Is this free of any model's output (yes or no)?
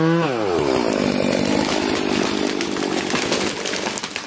yes